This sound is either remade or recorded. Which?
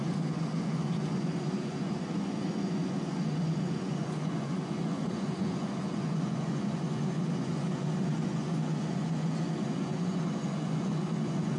remade